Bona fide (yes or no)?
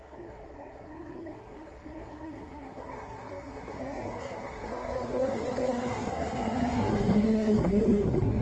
no